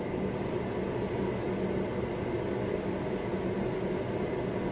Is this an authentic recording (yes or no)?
yes